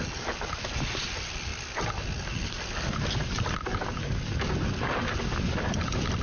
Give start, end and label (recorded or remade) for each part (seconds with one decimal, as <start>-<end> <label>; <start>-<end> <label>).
0.0-6.2 recorded